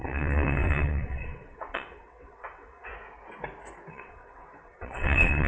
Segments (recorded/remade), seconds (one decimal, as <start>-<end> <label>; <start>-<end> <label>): 0.0-2.9 remade; 2.9-3.9 recorded; 3.9-5.5 remade